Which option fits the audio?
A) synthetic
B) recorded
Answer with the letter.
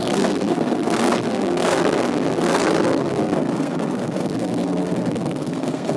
A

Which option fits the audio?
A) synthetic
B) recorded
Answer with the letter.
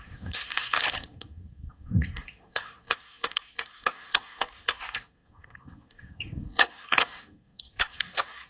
A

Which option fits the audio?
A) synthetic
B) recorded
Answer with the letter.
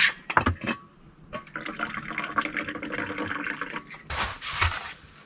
B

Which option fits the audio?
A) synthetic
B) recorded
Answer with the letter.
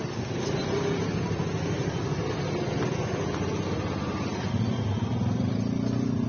B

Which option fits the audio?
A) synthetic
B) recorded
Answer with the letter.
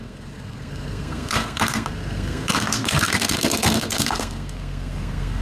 A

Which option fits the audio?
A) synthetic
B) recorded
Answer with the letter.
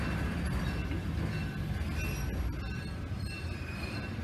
B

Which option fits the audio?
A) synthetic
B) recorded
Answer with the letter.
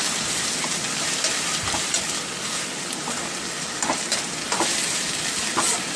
B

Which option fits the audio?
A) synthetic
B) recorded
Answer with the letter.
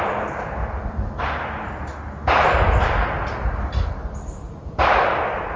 B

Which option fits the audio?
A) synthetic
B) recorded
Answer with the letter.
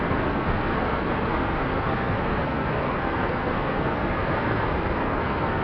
A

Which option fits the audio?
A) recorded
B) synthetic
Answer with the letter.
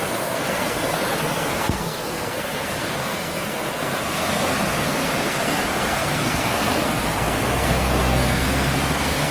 B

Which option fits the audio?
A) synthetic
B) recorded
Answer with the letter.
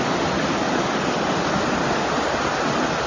B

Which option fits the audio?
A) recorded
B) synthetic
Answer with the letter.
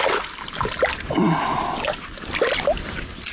A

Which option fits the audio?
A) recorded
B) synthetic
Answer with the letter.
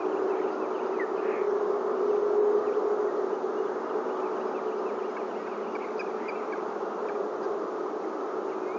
A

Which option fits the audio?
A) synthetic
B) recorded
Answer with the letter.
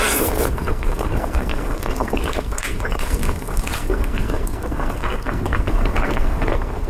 A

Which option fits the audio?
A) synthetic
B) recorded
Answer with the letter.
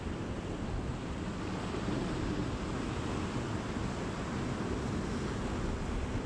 B